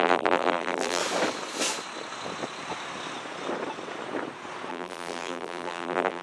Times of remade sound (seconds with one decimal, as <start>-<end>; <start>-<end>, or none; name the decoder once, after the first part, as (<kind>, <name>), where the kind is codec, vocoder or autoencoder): 0.0-1.0 (vocoder, BigVGAN v2); 4.7-6.2